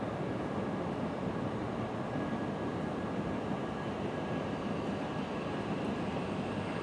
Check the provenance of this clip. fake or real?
real